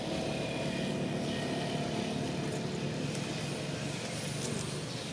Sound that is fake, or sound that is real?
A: real